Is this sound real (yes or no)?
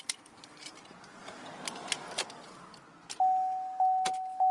yes